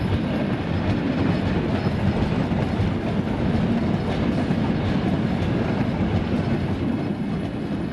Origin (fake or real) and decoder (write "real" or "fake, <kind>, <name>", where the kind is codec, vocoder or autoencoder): real